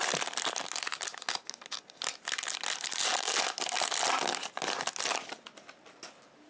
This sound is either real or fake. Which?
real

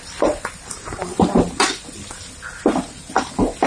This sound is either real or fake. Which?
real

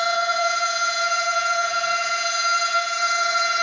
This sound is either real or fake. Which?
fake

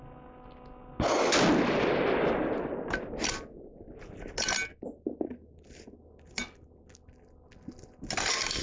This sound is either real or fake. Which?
real